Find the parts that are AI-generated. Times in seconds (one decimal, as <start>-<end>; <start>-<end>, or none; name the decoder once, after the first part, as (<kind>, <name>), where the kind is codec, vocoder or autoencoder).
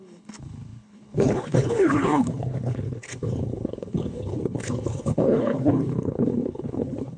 0.0-7.2 (codec, HILCodec)